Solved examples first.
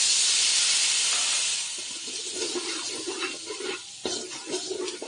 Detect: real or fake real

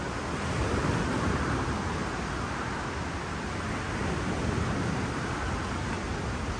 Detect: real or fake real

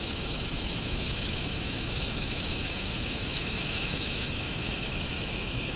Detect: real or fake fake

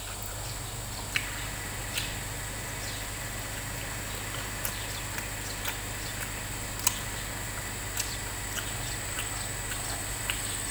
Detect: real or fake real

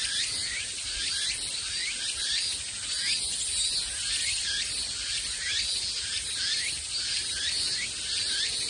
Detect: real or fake real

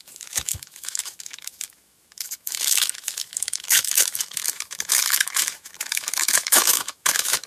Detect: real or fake fake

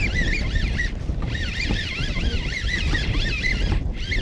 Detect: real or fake real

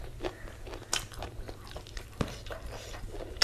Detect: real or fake real